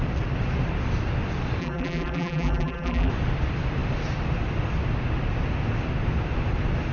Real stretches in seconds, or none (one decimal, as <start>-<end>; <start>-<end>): 0.0-1.6; 3.1-6.9